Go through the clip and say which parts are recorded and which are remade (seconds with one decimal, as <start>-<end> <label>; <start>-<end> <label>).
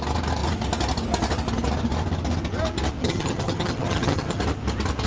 0.0-3.0 recorded; 3.0-4.4 remade; 4.4-5.1 recorded